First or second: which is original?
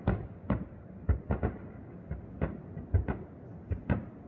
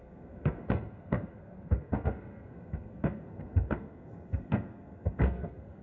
first